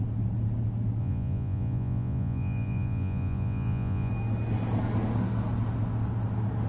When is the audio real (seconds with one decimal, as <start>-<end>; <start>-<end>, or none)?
0.0-1.0; 4.1-6.7